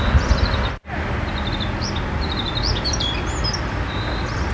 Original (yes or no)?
yes